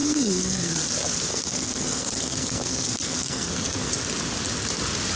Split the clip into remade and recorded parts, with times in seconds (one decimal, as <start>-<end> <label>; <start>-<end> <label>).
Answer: 0.0-0.7 remade; 0.7-1.3 recorded; 1.3-3.9 remade; 3.9-5.2 recorded